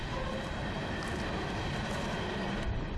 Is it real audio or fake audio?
real